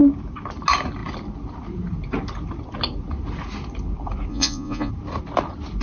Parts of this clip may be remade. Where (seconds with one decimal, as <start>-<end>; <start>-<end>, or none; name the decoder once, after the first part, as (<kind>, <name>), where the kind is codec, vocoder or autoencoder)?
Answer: 4.3-4.9 (vocoder, Vocos)